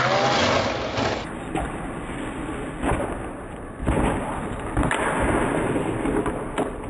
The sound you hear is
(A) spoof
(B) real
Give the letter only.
B